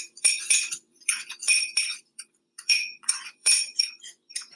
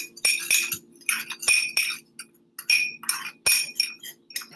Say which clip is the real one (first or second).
second